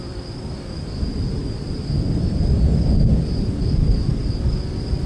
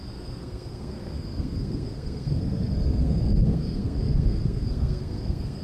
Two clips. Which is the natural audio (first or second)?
first